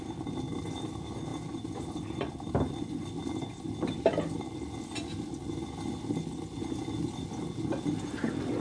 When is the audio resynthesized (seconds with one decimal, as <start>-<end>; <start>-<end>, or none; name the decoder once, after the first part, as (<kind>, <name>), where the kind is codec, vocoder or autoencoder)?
none